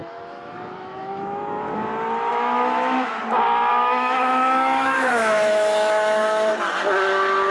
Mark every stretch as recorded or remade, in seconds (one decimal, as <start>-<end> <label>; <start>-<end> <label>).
0.0-1.7 remade; 1.7-2.3 recorded; 2.3-3.2 remade; 3.2-3.7 recorded; 3.7-6.5 remade; 6.5-7.5 recorded